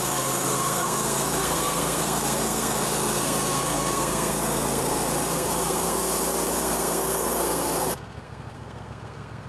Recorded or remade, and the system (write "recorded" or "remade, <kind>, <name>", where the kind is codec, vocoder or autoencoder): remade, codec, SNAC